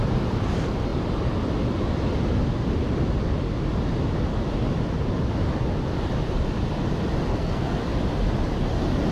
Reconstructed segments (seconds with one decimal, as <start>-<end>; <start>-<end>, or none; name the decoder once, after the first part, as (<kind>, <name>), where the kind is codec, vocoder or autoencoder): 7.3-7.8 (codec, SNAC)